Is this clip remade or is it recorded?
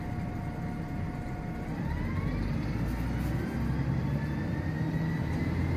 recorded